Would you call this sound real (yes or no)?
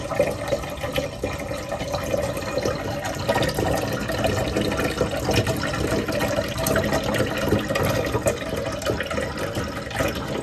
yes